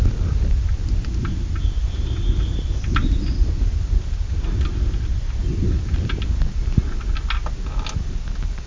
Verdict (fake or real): real